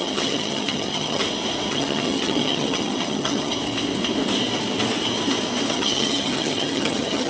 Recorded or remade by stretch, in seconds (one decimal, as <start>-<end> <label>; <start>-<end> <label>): 0.0-1.2 remade; 1.2-1.7 recorded; 1.7-3.5 remade; 3.5-5.7 recorded; 5.7-7.3 remade